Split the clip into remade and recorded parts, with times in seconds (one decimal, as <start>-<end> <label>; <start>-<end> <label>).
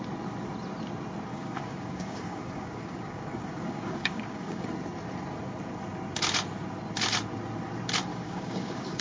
0.0-1.3 recorded; 1.3-4.7 remade; 4.7-8.1 recorded; 8.1-9.0 remade